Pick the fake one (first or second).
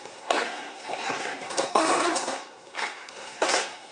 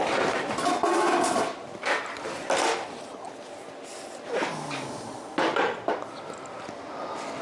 first